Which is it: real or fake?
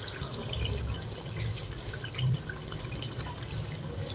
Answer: real